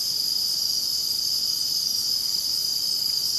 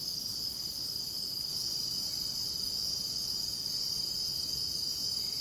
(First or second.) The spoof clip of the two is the first